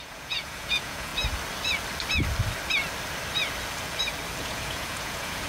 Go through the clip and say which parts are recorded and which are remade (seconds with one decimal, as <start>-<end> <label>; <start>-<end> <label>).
0.0-1.1 remade; 1.1-4.4 recorded; 4.4-5.5 remade